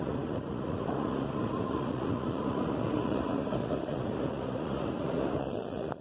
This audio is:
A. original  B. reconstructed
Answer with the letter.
B